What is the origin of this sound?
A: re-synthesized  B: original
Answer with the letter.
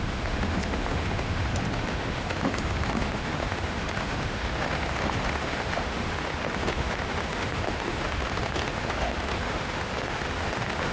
A